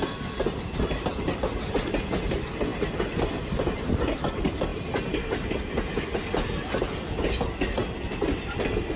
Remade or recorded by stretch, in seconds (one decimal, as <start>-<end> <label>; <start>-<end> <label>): 0.0-9.0 recorded